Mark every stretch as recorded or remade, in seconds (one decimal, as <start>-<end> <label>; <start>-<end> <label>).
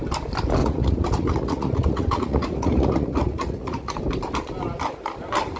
0.0-0.6 recorded; 0.6-4.0 remade; 4.0-5.6 recorded